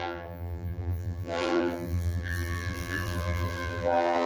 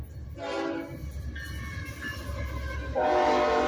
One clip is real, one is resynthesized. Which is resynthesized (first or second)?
first